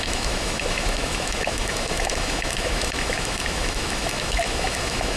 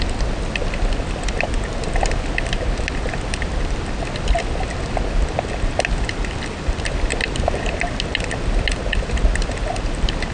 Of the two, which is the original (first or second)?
second